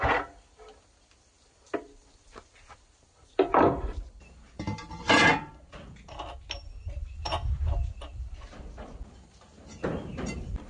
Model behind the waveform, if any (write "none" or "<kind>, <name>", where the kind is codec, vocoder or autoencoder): none